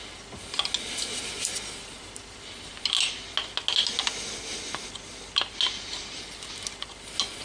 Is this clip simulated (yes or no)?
no